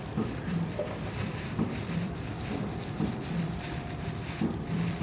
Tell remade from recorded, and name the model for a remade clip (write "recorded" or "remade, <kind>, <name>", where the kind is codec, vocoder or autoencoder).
remade, vocoder, BigVGAN v2